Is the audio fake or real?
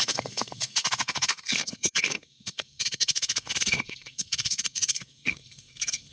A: fake